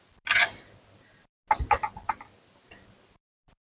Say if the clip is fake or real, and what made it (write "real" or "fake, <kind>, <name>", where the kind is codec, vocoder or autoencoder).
real